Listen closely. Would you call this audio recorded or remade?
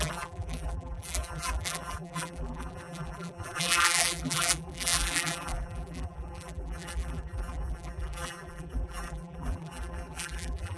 remade